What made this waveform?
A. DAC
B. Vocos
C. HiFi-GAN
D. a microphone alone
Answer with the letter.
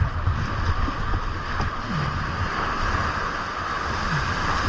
D